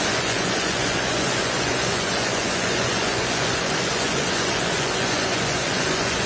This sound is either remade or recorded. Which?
remade